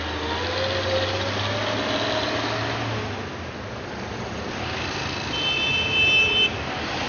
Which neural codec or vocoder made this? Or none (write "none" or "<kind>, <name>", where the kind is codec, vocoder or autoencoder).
none